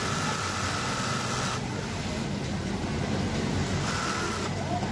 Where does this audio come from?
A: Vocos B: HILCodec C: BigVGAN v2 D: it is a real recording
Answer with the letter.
D